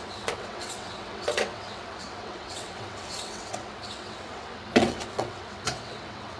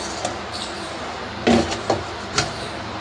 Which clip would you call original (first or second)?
second